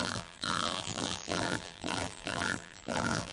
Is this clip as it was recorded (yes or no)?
no